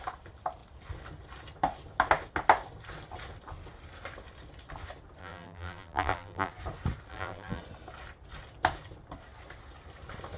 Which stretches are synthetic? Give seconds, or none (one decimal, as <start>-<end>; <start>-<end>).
5.2-6.5; 7.1-7.6